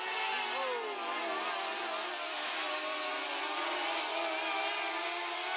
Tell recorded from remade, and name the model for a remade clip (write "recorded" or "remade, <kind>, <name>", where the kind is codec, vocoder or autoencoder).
recorded